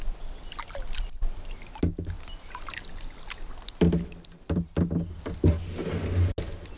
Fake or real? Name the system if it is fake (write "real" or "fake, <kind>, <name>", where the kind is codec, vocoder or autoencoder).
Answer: real